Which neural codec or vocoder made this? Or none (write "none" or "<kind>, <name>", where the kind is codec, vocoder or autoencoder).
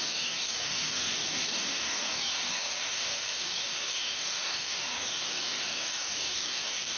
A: codec, DAC